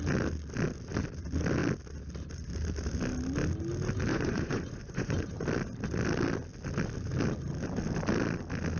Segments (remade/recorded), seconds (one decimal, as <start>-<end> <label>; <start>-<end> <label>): 0.0-4.1 recorded; 4.1-5.4 remade; 5.4-8.8 recorded